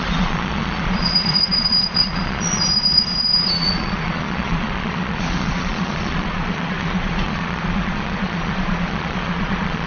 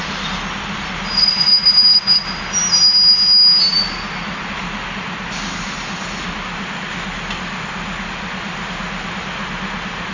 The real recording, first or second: second